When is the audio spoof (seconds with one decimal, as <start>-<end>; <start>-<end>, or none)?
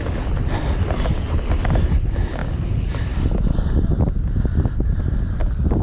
none